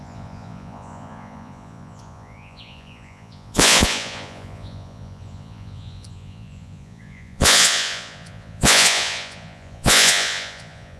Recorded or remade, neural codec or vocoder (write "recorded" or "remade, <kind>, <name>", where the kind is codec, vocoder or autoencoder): remade, vocoder, Vocos